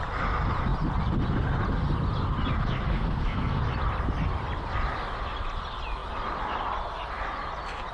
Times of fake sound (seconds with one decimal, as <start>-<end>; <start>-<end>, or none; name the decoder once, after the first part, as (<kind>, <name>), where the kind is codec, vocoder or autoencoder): 2.9-3.6 (codec, SNAC)